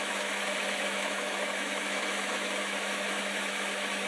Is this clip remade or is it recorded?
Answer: remade